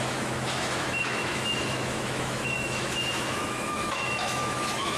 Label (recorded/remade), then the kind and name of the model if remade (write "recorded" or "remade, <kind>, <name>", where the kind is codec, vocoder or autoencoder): remade, autoencoder, DAC-VAE